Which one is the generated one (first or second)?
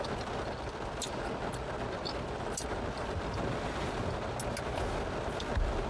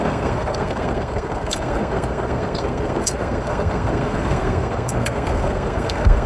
second